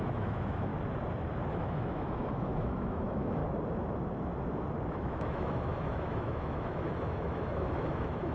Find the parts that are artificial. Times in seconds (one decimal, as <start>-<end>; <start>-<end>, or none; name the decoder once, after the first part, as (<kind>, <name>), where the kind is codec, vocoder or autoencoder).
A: 0.0-0.7 (autoencoder, DAC-VAE); 1.5-3.4; 4.9-8.3